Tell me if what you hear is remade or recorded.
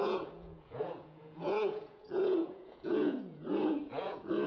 remade